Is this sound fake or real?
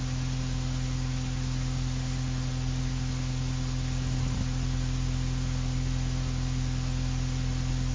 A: real